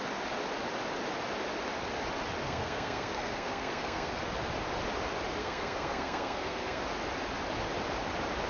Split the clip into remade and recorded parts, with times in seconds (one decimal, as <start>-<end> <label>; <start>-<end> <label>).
0.0-2.4 recorded; 2.4-4.1 remade; 4.1-5.4 recorded; 5.4-6.8 remade; 6.8-8.5 recorded

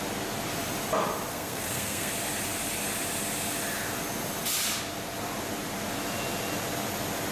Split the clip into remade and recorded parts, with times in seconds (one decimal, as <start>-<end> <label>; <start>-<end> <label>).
0.0-1.3 recorded; 1.3-2.1 remade; 2.1-7.3 recorded

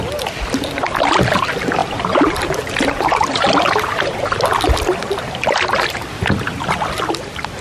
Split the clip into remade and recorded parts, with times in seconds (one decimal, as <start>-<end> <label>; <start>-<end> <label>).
0.0-7.6 recorded

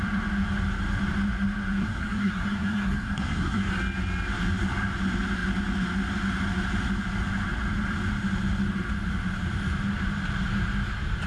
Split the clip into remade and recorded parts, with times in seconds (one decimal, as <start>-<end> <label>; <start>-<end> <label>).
0.0-1.8 recorded; 1.8-3.7 remade; 3.7-11.3 recorded